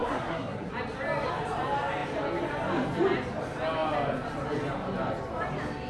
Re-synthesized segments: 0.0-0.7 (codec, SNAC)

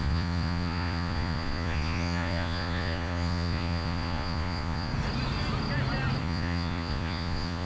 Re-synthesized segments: 0.0-4.9 (vocoder, Vocos); 6.2-7.6

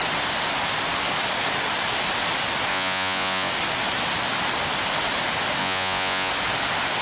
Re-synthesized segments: 2.7-3.5 (vocoder, Vocos); 5.6-6.3

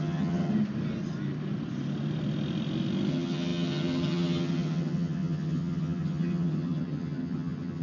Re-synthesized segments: 0.0-0.5 (vocoder, HiFi-GAN); 3.1-7.8